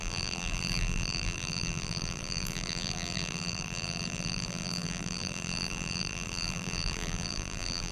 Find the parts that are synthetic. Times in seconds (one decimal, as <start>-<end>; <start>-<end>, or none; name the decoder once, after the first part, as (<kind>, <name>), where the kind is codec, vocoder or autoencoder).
0.0-7.9 (vocoder, BigVGAN v2)